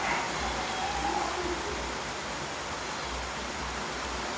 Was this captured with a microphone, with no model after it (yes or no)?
yes